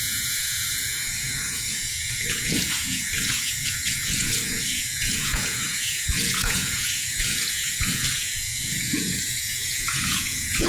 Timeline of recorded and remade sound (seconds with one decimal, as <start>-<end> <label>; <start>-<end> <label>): 0.0-10.7 remade